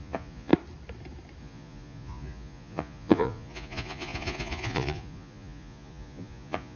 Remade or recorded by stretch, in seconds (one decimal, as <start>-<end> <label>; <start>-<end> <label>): 0.0-0.5 remade; 0.5-1.4 recorded; 1.4-6.8 remade